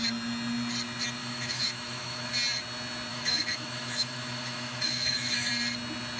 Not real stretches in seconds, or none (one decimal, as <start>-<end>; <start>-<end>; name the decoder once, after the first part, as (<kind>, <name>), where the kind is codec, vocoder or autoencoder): 1.2-2.3 (autoencoder, DAC-VAE); 3.1-5.5